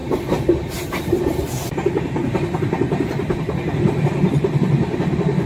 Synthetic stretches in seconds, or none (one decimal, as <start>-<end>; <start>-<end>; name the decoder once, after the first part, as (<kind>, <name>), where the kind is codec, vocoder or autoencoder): 0.0-1.2 (vocoder, BigVGAN v2)